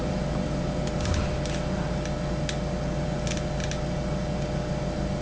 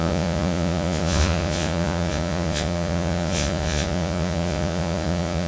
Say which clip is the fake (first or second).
second